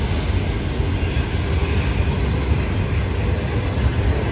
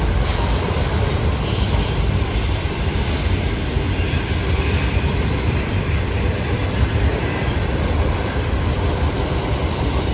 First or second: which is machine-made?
second